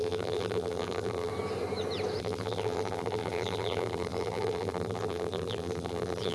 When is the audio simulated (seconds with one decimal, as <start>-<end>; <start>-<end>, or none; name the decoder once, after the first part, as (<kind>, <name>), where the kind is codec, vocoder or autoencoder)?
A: 0.0-1.3 (vocoder, BigVGAN v2); 2.2-6.3

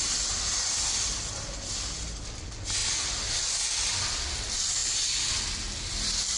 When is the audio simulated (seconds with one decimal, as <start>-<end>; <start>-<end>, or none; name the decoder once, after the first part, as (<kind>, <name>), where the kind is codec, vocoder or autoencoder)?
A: none

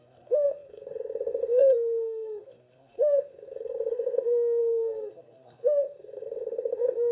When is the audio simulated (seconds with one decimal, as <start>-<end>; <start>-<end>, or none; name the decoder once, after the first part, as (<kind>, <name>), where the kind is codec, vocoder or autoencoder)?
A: 0.0-7.1 (codec, SNAC)